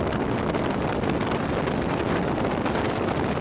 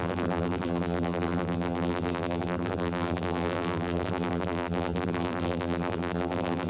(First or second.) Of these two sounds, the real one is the first